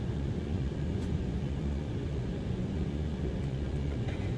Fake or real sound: fake